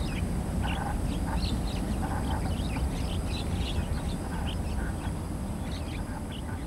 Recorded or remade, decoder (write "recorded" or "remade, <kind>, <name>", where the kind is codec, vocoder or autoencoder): recorded